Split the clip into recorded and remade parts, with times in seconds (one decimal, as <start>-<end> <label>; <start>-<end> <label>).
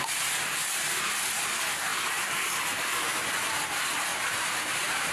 0.0-0.6 recorded; 0.6-1.2 remade; 1.2-4.1 recorded; 4.1-5.1 remade